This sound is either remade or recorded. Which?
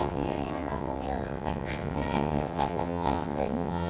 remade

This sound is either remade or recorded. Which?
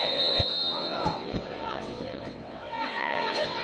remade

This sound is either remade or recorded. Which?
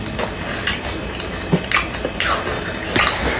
recorded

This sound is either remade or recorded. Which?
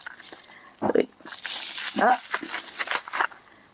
recorded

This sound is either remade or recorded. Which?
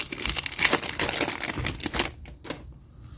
recorded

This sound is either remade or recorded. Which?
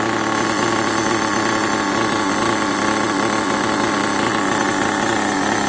recorded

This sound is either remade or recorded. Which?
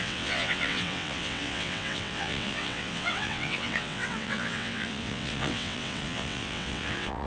remade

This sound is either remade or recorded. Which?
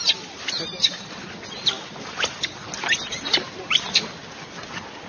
recorded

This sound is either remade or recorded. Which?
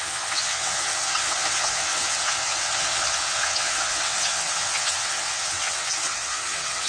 remade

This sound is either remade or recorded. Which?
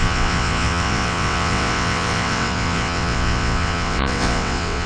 remade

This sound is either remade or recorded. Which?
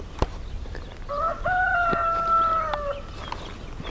recorded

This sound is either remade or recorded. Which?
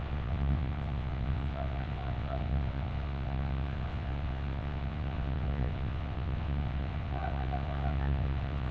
remade